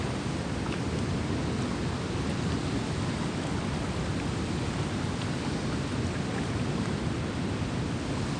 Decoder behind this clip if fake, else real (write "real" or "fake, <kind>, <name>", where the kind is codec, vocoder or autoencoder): real